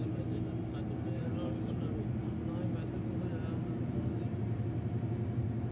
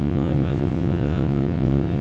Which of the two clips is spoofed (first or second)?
second